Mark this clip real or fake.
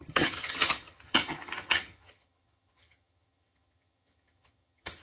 fake